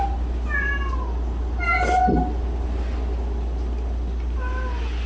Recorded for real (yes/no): yes